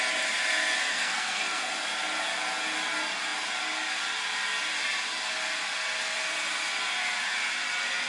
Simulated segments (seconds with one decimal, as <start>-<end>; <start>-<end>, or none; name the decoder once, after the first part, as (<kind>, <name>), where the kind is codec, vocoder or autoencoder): 0.9-1.7 (codec, SNAC)